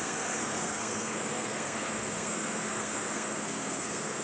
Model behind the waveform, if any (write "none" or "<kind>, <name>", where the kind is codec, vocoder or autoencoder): codec, SNAC